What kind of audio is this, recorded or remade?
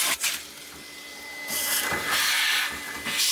recorded